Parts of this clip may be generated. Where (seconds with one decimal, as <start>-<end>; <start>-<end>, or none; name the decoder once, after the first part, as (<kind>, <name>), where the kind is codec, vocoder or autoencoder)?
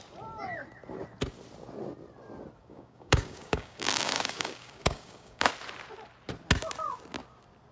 2.6-5.5 (codec, DAC)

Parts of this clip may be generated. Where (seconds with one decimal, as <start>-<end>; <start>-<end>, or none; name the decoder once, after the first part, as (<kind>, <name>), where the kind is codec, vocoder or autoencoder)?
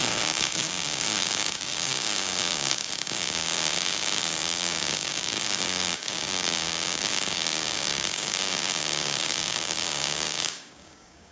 0.0-11.3 (codec, DAC)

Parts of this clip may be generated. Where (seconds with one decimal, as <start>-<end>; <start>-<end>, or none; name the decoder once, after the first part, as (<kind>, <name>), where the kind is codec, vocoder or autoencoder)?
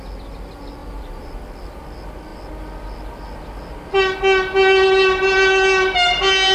none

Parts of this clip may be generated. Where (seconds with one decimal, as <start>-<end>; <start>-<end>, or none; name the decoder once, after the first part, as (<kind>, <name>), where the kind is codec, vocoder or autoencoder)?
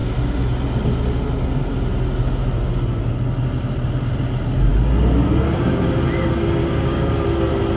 6.6-7.1 (codec, DAC)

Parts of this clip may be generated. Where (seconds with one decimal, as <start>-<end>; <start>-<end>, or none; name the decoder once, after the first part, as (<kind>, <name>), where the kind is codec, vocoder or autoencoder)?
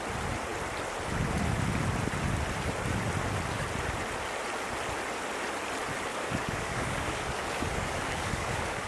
6.1-8.9 (codec, DAC)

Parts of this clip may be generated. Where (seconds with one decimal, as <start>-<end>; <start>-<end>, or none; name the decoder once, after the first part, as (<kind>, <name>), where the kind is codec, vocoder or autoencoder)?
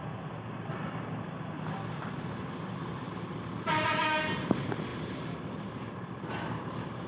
none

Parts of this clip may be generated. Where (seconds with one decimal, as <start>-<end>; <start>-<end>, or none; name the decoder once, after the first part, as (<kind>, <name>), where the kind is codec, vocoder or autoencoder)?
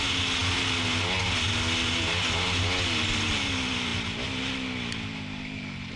none